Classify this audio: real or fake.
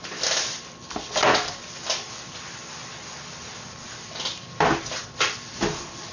real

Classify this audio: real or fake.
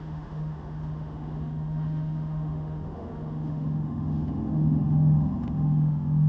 fake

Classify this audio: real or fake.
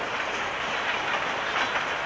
real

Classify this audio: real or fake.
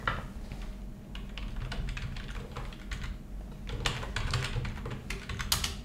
real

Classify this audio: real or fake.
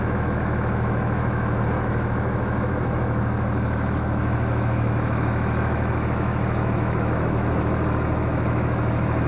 fake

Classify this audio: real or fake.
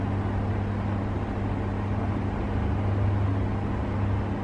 real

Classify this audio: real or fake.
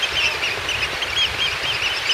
real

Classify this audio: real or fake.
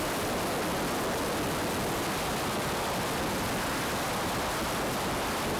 real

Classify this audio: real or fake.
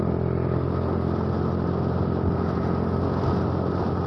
real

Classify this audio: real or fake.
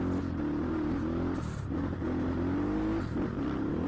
real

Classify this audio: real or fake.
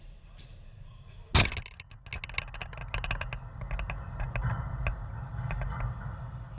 real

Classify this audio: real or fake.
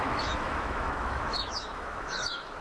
fake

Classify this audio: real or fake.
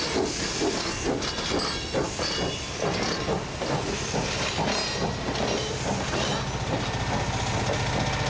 real